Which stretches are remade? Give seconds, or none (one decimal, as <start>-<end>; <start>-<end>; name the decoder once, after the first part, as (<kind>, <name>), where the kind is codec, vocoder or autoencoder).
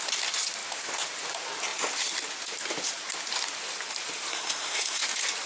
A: 4.3-5.0 (codec, SNAC)